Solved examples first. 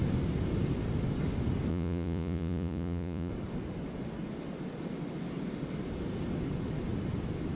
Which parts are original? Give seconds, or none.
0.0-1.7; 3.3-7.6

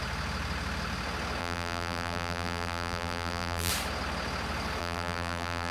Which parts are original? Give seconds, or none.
0.0-1.4; 3.7-4.8

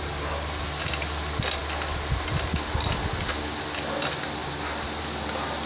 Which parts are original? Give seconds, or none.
0.0-5.7

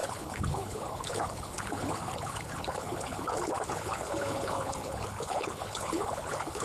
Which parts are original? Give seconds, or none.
none